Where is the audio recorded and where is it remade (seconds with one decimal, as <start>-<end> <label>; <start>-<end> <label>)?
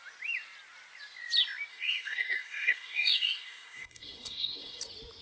0.0-1.7 recorded; 1.7-4.8 remade; 4.8-5.2 recorded